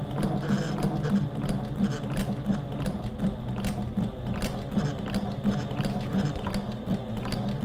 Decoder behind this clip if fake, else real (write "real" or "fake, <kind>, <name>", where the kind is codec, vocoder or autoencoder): real